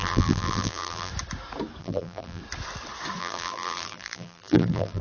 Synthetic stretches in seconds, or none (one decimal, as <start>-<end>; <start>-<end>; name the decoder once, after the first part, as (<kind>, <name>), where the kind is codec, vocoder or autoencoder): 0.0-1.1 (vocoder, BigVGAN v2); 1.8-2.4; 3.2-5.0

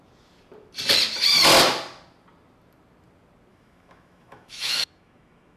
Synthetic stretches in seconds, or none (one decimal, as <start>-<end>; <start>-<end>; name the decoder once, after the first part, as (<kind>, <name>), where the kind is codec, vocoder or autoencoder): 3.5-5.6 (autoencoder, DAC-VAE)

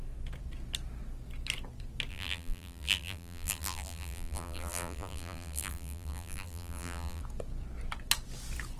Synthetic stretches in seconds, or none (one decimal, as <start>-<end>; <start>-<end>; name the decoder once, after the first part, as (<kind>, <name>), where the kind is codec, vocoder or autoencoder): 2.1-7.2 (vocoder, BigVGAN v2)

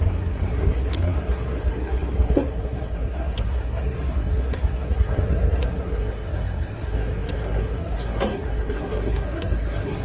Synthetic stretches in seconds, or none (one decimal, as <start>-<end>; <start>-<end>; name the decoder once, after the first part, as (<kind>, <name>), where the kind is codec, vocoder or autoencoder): 0.0-10.0 (codec, SNAC)

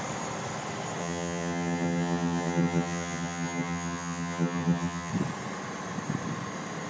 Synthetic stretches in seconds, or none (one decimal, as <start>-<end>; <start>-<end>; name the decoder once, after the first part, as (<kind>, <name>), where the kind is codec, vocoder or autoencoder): 1.0-5.1 (vocoder, HiFi-GAN)

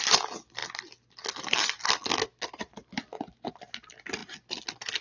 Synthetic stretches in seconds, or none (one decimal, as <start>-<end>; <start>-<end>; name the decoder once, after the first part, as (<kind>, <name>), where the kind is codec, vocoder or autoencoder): none